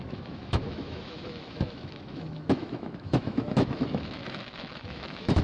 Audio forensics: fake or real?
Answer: fake